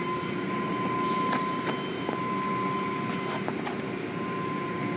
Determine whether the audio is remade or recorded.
recorded